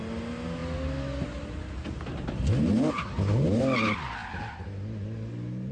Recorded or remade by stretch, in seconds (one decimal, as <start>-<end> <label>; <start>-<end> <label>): 0.0-5.7 recorded